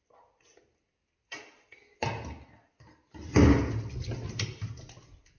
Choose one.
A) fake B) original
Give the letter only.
B